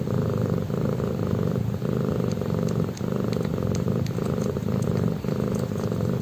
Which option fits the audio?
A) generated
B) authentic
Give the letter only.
A